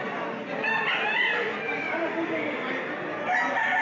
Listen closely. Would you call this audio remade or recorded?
recorded